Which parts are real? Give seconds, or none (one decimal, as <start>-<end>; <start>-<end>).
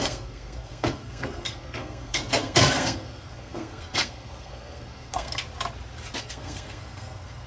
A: 5.4-6.2